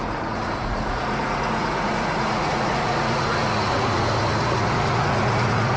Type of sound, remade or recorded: remade